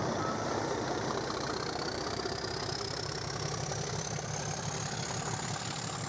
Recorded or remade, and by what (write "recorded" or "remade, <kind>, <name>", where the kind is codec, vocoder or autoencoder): recorded